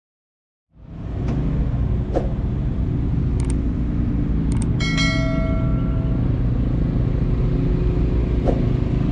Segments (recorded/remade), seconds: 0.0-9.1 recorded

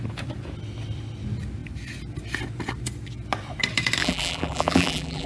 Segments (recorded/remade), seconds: 0.0-4.0 recorded; 4.0-5.3 remade

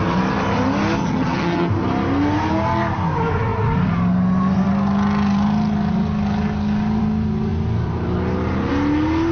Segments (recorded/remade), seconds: 0.0-1.0 recorded; 1.0-1.7 remade; 1.7-9.3 recorded

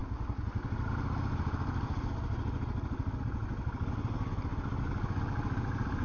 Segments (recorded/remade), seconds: 0.0-6.0 recorded

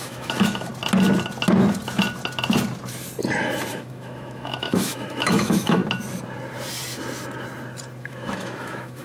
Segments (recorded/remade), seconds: 0.0-0.7 remade; 0.7-3.7 recorded; 3.7-5.8 remade; 5.8-8.0 recorded; 8.0-9.0 remade

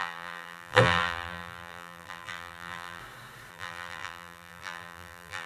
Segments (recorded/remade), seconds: 0.0-3.0 remade; 3.0-3.5 recorded; 3.5-5.5 remade